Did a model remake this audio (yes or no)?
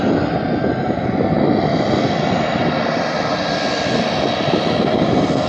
no